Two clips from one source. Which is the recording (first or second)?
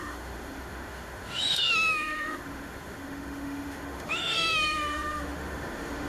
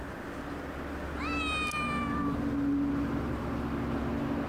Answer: second